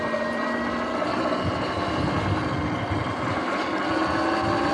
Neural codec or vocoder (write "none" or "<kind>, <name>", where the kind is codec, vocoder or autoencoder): none